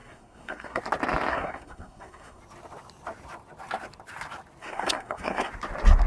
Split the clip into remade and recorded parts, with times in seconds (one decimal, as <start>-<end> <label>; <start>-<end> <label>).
0.0-0.8 remade; 0.8-1.3 recorded; 1.3-2.4 remade; 2.4-4.6 recorded; 4.6-5.5 remade; 5.5-6.1 recorded